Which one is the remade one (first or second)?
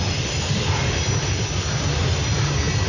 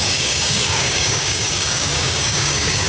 second